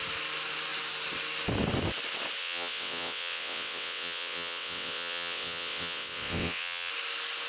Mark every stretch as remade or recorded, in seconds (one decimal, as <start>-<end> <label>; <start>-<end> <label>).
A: 0.0-2.4 recorded; 2.4-6.9 remade; 6.9-7.5 recorded